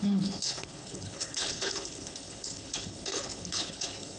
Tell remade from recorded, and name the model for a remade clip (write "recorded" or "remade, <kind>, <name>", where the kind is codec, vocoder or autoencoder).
remade, codec, HILCodec